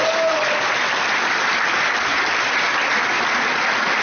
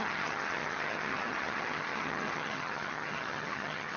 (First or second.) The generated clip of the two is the second